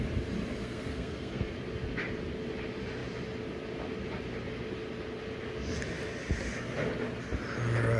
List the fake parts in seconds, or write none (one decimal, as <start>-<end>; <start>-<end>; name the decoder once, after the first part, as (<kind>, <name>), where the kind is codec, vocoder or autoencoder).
0.6-1.5 (codec, SNAC)